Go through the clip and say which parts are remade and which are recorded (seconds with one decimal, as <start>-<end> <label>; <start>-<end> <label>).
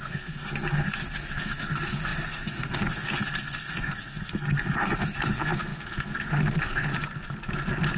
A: 0.0-6.9 remade; 6.9-8.0 recorded